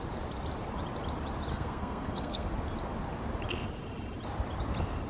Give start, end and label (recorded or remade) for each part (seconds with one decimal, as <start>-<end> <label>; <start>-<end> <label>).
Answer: 0.0-1.5 recorded; 1.5-2.5 remade; 2.5-5.1 recorded